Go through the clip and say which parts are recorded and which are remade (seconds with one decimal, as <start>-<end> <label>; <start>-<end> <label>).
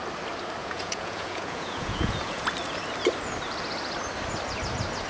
0.0-0.6 recorded; 0.6-2.5 remade; 2.5-5.1 recorded